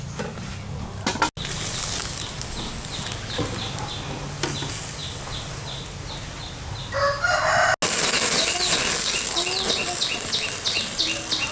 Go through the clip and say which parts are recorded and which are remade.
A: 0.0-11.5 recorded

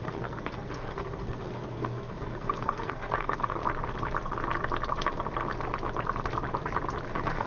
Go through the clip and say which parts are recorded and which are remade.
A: 0.0-3.6 remade; 3.6-7.1 recorded; 7.1-7.5 remade

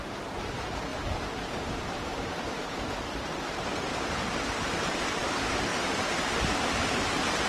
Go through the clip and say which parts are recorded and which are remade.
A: 0.0-7.5 remade

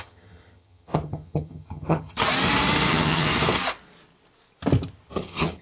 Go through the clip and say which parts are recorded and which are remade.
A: 0.0-2.2 remade; 2.2-2.9 recorded; 2.9-3.3 remade; 3.3-5.1 recorded; 5.1-5.6 remade

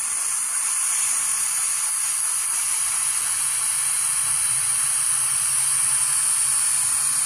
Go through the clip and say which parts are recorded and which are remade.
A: 0.0-7.3 recorded